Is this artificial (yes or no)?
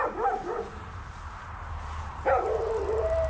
yes